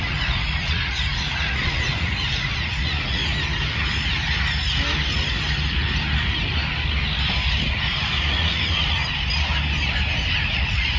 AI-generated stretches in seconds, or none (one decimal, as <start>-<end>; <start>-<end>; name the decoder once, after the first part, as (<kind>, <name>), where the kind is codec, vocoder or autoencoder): 0.0-3.2 (vocoder, Vocos); 8.3-9.0; 10.3-11.0